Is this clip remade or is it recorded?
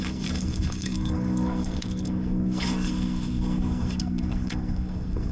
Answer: remade